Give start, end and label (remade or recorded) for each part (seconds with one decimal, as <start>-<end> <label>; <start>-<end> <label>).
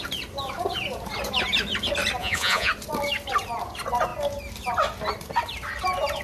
0.0-2.2 recorded; 2.2-2.7 remade; 2.7-6.2 recorded